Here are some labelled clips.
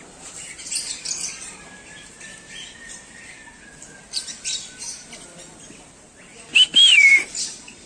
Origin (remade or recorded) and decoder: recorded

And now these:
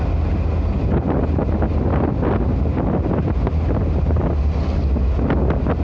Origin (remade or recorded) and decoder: recorded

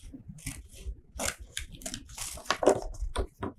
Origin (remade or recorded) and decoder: recorded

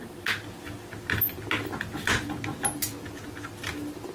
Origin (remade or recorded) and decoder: recorded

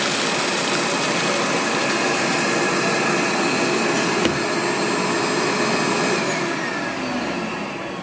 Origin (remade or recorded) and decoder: recorded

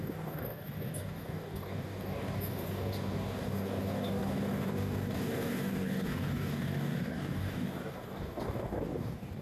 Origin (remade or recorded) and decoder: remade, codec, DAC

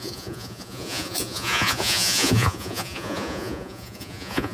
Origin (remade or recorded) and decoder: remade, vocoder, Vocos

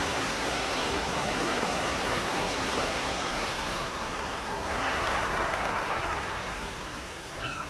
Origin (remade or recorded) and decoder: remade, codec, SNAC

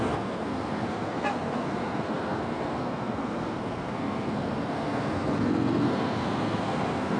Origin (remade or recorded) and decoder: remade, codec, SNAC